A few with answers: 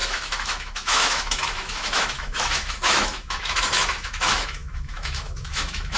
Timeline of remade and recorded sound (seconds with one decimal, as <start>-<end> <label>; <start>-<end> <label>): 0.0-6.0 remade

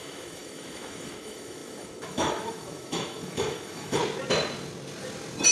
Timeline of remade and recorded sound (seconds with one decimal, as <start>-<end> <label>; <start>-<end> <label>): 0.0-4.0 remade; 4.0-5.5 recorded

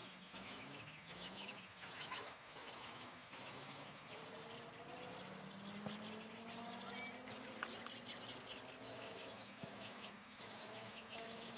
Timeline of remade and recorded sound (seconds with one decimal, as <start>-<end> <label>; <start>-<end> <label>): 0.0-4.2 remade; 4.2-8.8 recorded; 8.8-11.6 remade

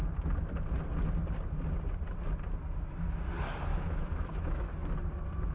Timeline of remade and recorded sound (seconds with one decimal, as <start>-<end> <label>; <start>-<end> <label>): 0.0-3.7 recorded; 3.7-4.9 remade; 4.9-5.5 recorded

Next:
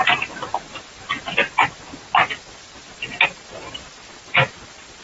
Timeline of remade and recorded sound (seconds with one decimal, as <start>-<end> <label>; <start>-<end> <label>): 0.0-5.0 recorded